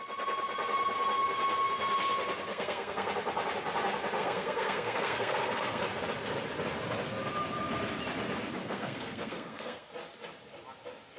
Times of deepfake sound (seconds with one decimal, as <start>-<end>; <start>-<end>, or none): 2.5-3.1; 4.2-5.8; 8.6-9.9